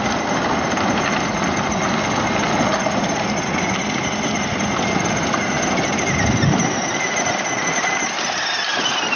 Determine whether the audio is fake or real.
real